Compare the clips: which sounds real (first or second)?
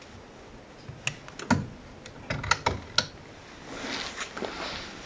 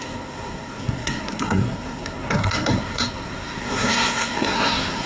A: first